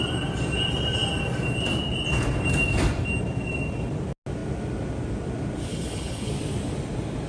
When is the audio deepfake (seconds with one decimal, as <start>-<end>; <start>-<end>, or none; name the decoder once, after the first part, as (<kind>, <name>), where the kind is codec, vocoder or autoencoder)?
5.7-6.3 (codec, HILCodec)